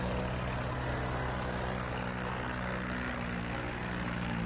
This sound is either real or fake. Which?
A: real